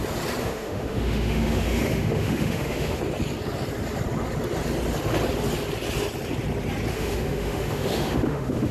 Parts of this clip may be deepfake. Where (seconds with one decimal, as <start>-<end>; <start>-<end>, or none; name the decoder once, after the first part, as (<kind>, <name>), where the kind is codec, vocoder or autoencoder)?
0.4-3.0 (autoencoder, DAC-VAE); 6.9-8.7